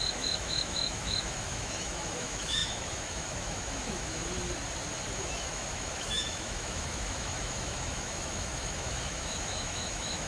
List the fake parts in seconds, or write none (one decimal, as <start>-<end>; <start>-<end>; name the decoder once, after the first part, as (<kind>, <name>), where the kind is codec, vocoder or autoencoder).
0.0-4.2 (autoencoder, DAC-VAE); 5.1-10.3